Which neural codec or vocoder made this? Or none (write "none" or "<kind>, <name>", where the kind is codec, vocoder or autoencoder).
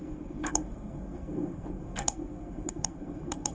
codec, SNAC